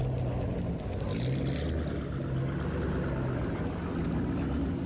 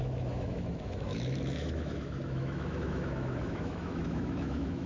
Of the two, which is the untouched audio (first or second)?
first